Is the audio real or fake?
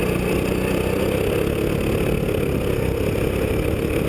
real